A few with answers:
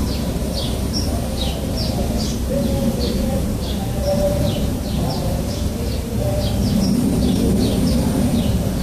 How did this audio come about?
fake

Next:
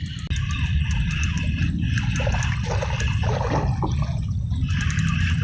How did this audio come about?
real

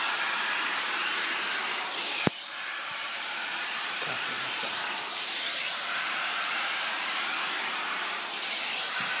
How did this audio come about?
fake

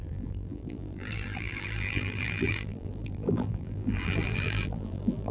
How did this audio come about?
fake